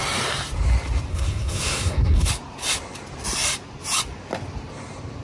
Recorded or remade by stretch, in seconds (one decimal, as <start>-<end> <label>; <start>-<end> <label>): 0.0-1.1 recorded; 1.1-2.3 remade; 2.3-5.2 recorded